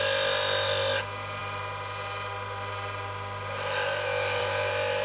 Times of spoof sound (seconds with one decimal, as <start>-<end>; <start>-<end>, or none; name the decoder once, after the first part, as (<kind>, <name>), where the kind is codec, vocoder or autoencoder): none

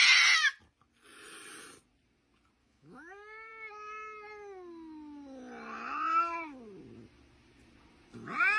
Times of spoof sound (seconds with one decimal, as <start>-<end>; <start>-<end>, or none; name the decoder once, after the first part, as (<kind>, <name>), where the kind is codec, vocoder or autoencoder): 2.6-3.5 (autoencoder, DAC-VAE)

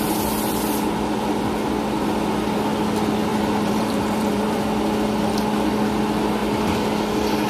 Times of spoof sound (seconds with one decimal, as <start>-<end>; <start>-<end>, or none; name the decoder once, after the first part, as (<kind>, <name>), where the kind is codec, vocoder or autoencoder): 3.3-4.6 (vocoder, BigVGAN v2)

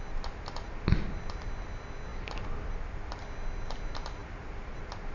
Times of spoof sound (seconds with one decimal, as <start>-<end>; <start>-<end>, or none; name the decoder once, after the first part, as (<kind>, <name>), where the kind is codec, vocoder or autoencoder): none

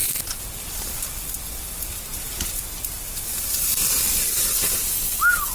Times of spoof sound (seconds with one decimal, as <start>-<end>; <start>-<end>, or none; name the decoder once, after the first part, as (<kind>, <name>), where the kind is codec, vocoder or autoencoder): none

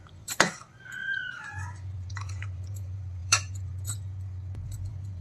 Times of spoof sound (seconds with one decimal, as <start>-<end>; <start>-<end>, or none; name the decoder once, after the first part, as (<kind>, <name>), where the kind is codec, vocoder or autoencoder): 0.0-5.2 (vocoder, Vocos)

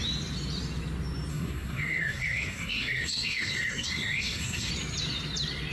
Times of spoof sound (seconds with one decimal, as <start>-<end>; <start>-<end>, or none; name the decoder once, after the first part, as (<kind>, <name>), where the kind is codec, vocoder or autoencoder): 1.3-4.7 (codec, SNAC)

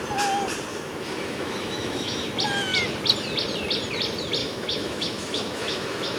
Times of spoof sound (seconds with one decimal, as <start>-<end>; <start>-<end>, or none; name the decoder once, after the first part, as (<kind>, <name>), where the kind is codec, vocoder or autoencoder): 0.7-2.3 (autoencoder, DAC-VAE); 4.4-6.2